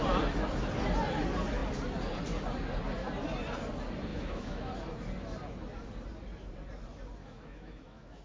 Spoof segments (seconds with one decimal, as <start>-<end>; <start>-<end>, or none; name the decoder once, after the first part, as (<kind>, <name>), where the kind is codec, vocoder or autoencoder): 4.1-4.7 (autoencoder, DAC-VAE); 7.2-8.2